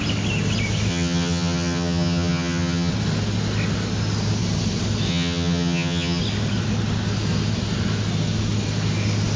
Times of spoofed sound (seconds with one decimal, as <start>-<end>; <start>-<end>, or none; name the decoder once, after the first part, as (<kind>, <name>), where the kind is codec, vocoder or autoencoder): 0.9-2.9 (vocoder, HiFi-GAN); 5.1-6.2